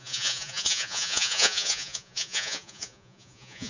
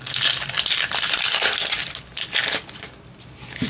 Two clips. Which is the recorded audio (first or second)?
second